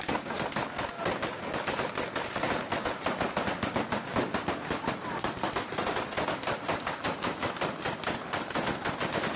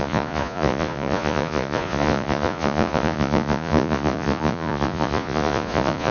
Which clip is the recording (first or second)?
first